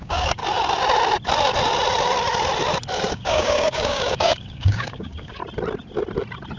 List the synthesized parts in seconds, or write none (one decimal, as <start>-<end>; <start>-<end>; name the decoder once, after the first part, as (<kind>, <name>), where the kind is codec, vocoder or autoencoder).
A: 0.0-0.4 (codec, DAC); 3.1-5.4